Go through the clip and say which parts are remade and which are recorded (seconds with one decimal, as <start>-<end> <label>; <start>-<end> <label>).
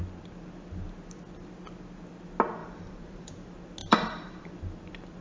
0.0-2.6 recorded; 2.6-3.3 remade; 3.3-3.8 recorded; 3.8-4.5 remade; 4.5-5.2 recorded